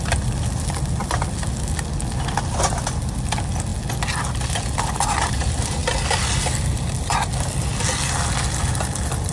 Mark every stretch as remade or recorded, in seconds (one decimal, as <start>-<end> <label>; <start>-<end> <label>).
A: 0.0-9.3 recorded